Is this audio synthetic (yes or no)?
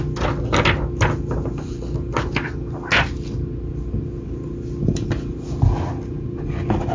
no